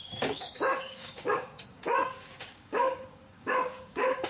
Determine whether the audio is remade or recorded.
remade